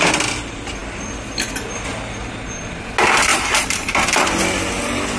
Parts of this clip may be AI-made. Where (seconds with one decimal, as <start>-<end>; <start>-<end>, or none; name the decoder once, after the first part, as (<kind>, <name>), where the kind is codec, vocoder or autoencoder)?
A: 3.3-4.4 (vocoder, BigVGAN v2)